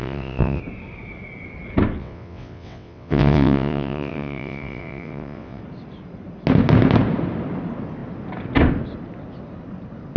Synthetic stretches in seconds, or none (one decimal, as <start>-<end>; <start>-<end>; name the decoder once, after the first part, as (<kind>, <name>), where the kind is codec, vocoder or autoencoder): 0.0-0.6 (vocoder, WaveNeXt); 2.0-5.6